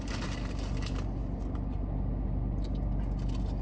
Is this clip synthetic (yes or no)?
no